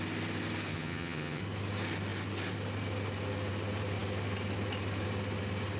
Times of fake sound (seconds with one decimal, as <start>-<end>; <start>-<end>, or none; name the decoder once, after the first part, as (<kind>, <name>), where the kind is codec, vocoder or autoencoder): 0.7-1.4 (vocoder, HiFi-GAN)